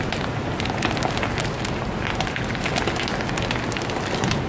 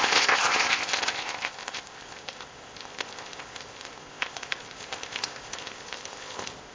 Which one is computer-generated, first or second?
second